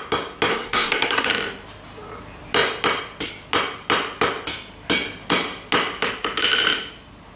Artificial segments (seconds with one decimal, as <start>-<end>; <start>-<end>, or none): 0.5-1.3